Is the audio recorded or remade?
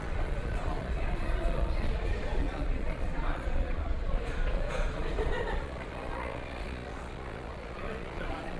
remade